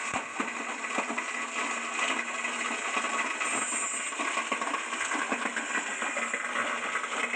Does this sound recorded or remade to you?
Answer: recorded